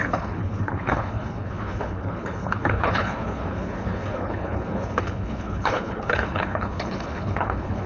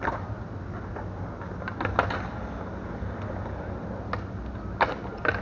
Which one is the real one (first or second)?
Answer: second